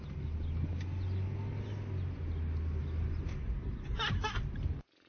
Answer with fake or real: real